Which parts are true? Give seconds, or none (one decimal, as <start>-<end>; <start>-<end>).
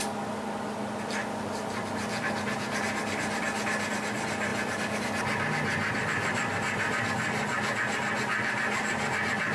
0.0-9.5